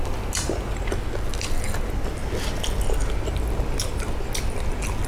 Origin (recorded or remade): recorded